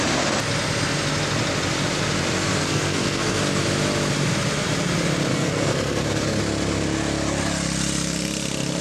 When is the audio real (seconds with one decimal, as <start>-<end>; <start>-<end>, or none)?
0.0-2.6; 3.4-5.3; 6.4-8.8